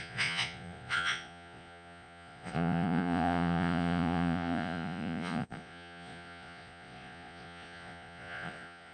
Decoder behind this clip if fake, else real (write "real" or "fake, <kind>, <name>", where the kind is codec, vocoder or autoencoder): fake, vocoder, Vocos